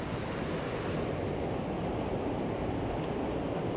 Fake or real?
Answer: real